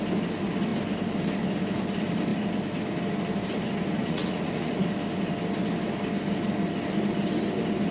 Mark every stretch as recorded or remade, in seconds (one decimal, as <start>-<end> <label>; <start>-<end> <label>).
0.0-4.0 recorded; 4.0-4.7 remade; 4.7-7.9 recorded